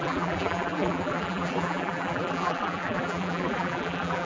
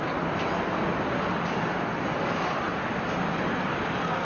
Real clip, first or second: second